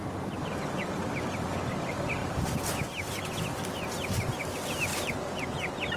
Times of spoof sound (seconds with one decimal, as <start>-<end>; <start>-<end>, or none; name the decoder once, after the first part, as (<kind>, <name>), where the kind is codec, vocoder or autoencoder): 0.0-1.0 (vocoder, BigVGAN v2); 2.2-3.6